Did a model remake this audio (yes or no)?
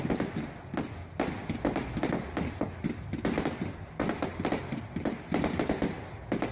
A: no